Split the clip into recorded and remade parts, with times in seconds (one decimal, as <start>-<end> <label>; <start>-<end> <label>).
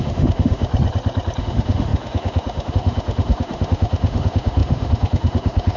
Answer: 0.0-0.7 remade; 0.7-1.4 recorded; 1.4-5.8 remade